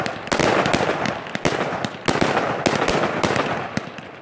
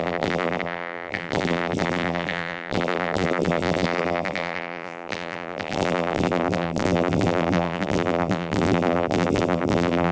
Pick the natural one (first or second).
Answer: first